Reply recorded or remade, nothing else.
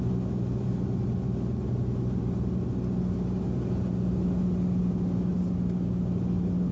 recorded